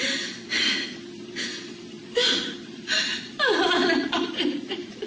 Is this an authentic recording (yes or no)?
no